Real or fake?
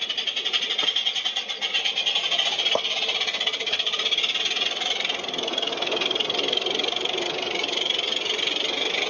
real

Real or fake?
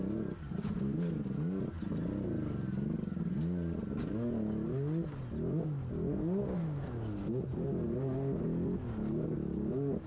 real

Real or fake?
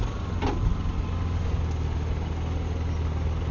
real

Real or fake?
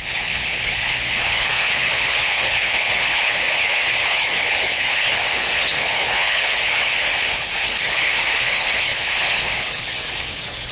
fake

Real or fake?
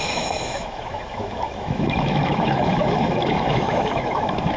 fake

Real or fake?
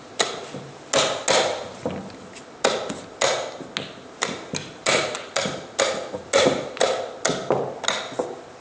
real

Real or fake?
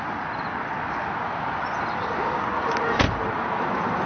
real